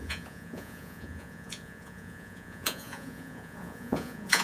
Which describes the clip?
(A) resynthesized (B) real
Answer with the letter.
A